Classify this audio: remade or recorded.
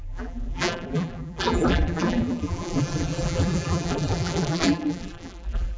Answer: remade